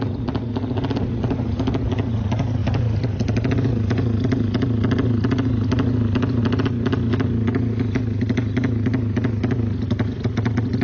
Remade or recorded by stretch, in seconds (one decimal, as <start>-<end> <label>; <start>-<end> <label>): 0.0-10.8 recorded